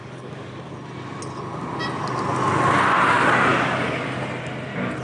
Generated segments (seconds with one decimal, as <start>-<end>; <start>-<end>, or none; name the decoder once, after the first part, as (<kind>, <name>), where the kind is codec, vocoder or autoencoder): 0.0-0.7 (codec, DAC); 3.5-4.0